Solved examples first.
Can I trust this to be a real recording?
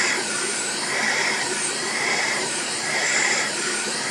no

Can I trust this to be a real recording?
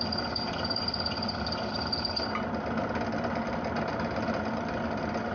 yes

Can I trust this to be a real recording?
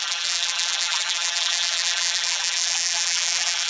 no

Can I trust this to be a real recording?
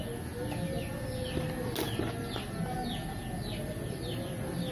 yes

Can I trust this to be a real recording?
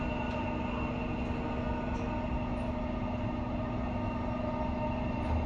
yes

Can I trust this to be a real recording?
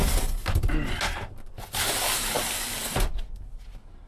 yes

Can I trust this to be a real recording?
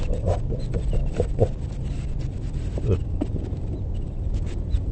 yes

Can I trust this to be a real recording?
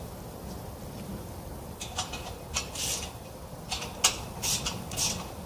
yes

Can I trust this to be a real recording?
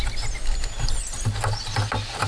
yes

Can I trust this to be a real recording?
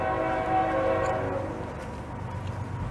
yes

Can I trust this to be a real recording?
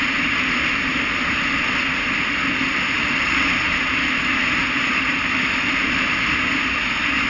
no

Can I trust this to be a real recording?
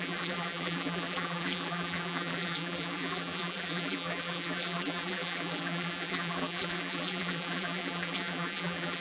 no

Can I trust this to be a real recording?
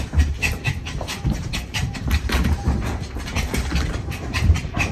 no